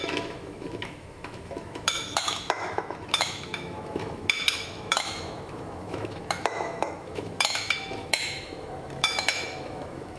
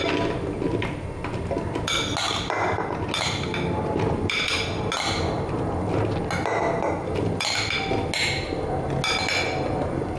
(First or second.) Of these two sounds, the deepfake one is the first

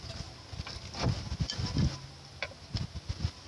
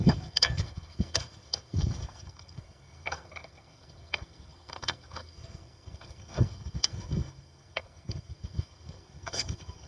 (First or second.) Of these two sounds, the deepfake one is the second